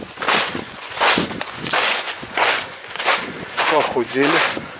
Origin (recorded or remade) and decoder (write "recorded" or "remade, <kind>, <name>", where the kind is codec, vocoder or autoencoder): remade, vocoder, Vocos